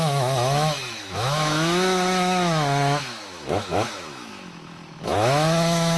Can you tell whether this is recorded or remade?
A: remade